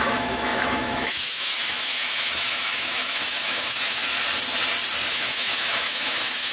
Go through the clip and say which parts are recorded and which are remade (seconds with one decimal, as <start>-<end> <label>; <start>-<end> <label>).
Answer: 0.0-4.0 remade; 4.0-5.1 recorded; 5.1-6.5 remade